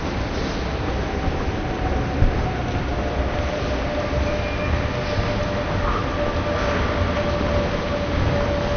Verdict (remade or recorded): recorded